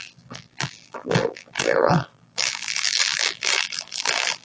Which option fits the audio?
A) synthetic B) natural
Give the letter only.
A